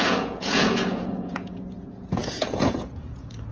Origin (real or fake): fake